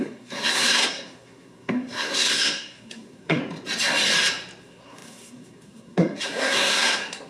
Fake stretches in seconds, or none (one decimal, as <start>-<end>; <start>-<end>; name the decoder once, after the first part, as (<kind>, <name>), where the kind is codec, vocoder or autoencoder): 0.0-3.4 (codec, SNAC); 4.6-7.3